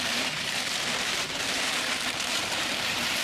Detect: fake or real fake